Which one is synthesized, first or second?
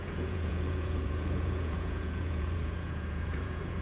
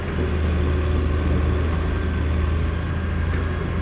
first